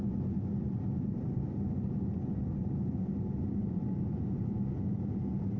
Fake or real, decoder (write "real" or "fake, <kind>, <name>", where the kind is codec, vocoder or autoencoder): real